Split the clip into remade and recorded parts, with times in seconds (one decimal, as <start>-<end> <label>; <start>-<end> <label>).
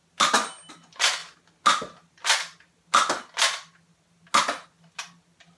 0.0-5.6 recorded